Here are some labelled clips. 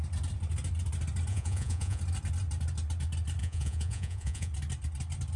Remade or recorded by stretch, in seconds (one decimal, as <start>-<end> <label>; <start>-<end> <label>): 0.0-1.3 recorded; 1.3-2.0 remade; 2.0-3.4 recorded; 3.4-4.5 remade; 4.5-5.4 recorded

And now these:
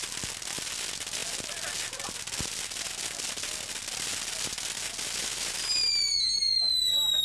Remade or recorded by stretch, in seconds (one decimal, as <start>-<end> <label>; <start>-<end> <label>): 0.0-7.2 recorded

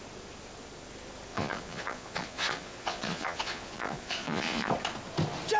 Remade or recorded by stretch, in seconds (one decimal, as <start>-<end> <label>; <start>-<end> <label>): 0.0-1.3 recorded; 1.3-4.7 remade; 4.7-5.6 recorded

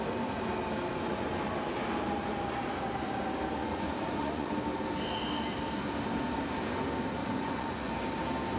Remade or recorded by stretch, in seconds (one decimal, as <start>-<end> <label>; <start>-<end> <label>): 0.0-3.6 recorded; 3.6-4.5 remade; 4.5-7.2 recorded; 7.2-7.9 remade; 7.9-8.6 recorded

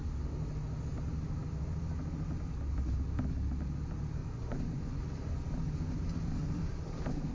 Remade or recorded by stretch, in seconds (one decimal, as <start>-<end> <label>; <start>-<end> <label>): 0.0-4.2 recorded; 4.2-5.0 remade; 5.0-7.3 recorded

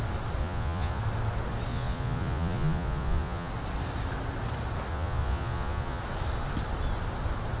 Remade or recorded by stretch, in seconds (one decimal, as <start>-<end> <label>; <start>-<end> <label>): 0.0-0.4 recorded; 0.4-1.0 remade; 1.0-1.7 recorded; 1.7-3.5 remade; 3.5-4.9 recorded; 4.9-6.0 remade; 6.0-7.6 recorded

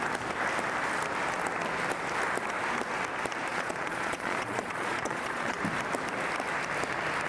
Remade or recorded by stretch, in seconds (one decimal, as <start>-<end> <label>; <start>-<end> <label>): 0.0-3.5 recorded; 3.5-5.6 remade; 5.6-7.3 recorded